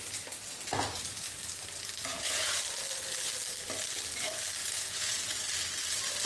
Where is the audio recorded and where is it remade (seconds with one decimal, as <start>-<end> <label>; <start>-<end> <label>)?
0.0-2.1 recorded; 2.1-2.6 remade; 2.6-4.6 recorded; 4.6-5.4 remade; 5.4-6.3 recorded